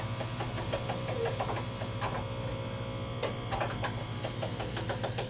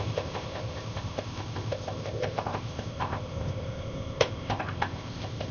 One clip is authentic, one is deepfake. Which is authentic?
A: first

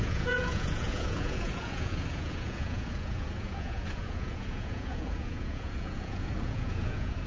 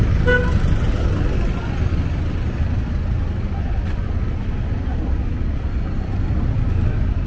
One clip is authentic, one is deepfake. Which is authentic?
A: second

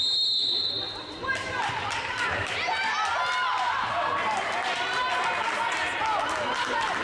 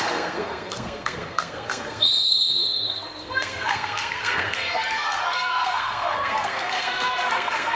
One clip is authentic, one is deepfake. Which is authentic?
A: first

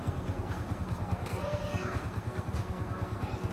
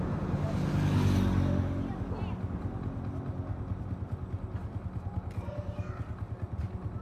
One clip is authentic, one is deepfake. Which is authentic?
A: second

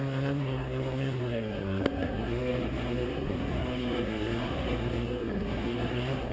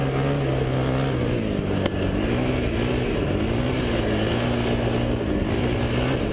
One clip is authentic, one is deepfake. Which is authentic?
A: second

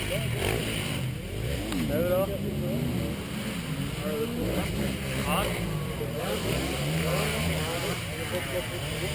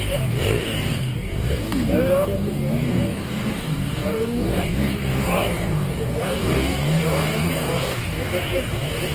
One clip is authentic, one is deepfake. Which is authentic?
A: first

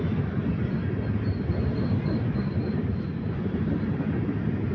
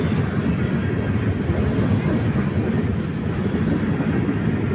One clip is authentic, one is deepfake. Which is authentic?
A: second